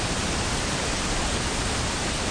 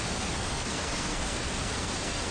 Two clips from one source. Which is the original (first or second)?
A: first